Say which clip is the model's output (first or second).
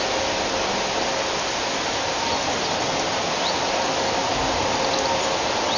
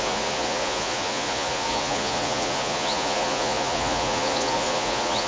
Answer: second